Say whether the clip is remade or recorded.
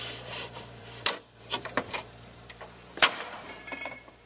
remade